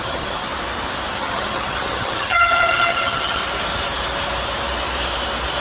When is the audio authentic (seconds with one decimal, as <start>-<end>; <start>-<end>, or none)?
0.5-1.1; 3.4-5.6